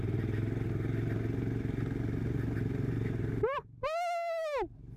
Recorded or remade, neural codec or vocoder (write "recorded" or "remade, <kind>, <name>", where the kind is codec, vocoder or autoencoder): recorded